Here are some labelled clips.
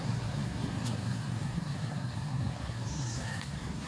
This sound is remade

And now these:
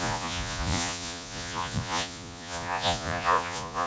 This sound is remade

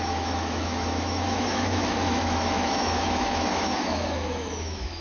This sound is remade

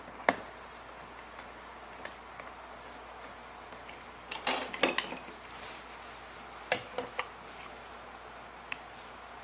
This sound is recorded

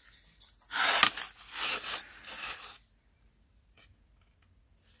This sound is recorded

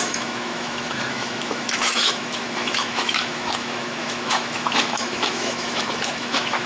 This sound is remade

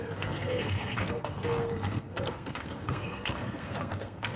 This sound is remade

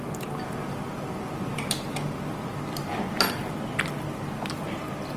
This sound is recorded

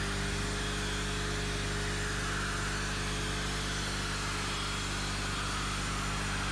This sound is recorded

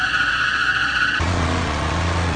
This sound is remade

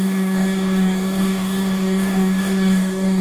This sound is remade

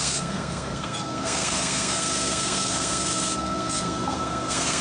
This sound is remade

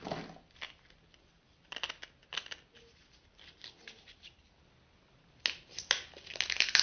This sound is recorded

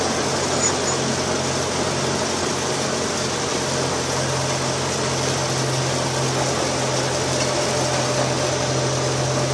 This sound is recorded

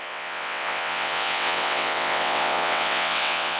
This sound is remade